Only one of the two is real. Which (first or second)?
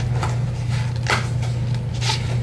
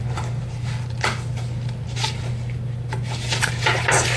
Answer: first